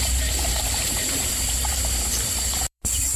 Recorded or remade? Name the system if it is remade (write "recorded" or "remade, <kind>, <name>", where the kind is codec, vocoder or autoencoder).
remade, vocoder, BigVGAN v2